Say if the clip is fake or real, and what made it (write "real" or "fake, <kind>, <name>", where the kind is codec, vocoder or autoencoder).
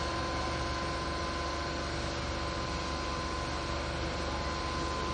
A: real